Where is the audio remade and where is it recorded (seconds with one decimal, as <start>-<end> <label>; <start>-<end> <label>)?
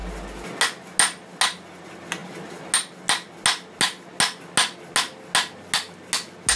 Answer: 0.0-6.6 recorded